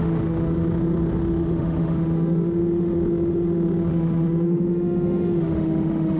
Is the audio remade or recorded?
remade